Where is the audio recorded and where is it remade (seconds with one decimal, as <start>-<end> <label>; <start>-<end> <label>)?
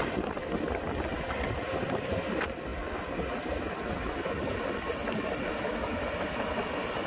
0.0-7.1 recorded